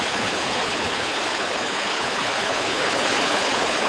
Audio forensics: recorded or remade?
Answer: remade